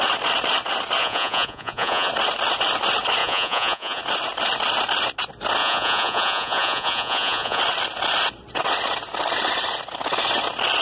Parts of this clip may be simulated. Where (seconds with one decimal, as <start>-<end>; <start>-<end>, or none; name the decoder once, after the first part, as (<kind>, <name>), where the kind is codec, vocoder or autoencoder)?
1.0-2.1 (vocoder, Vocos); 3.2-4.0; 5.6-7.6